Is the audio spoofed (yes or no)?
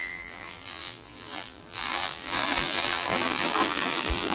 yes